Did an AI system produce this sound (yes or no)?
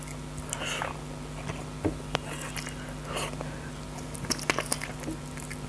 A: no